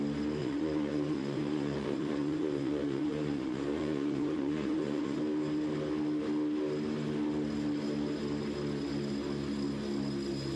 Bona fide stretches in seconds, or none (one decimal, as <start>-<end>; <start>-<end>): 0.0-0.4; 5.2-10.6